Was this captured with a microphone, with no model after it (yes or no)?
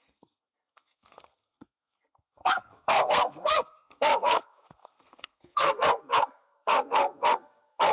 no